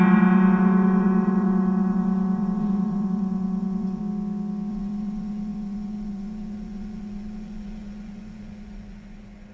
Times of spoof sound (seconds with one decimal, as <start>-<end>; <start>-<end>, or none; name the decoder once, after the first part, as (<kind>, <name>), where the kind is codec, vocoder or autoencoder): 0.0-4.0 (vocoder, Vocos); 4.7-9.5